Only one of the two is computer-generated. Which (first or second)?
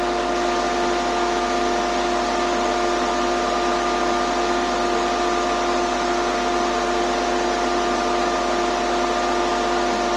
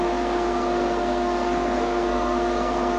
second